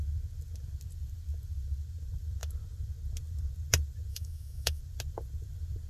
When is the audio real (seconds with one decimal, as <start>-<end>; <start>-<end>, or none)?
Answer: 0.0-4.1; 4.8-5.9

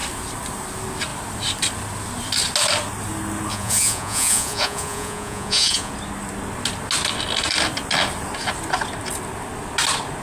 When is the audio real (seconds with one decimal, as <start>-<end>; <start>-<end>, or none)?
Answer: 0.0-3.5; 5.9-10.2